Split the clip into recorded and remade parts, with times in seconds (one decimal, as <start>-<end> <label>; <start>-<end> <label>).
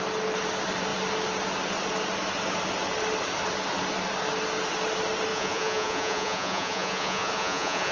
0.0-5.3 recorded; 5.3-7.9 remade